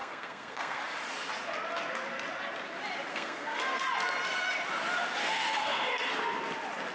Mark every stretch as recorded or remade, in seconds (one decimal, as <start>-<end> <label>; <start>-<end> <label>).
0.0-0.8 remade; 0.8-3.1 recorded; 3.1-3.8 remade; 3.8-5.2 recorded; 5.2-6.1 remade; 6.1-6.9 recorded